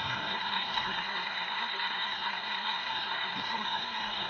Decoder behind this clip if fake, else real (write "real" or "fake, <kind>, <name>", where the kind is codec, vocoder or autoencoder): fake, codec, SNAC